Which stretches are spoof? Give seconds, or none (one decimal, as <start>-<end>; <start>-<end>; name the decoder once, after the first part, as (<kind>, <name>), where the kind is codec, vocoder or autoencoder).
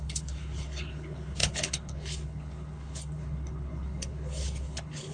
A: 0.0-5.1 (codec, HILCodec)